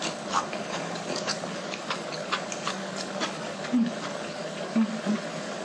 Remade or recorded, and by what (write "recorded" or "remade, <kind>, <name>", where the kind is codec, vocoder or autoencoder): remade, codec, DAC